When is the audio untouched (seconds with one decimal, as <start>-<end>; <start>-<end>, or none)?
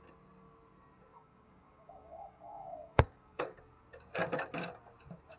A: 0.0-1.1; 3.6-5.4